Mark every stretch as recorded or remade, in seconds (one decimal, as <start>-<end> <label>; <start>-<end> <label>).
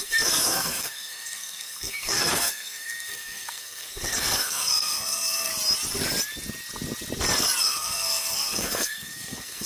0.0-5.5 remade; 5.5-7.6 recorded; 7.6-9.7 remade